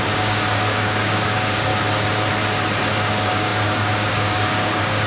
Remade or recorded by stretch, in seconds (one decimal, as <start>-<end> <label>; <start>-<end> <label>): 0.0-1.7 remade; 1.7-3.1 recorded; 3.1-5.1 remade